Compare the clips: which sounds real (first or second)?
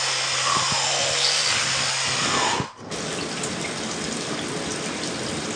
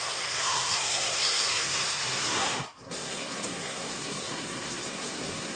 first